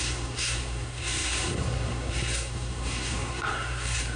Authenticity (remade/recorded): remade